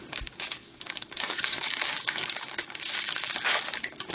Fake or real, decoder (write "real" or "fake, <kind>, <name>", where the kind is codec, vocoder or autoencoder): fake, codec, DAC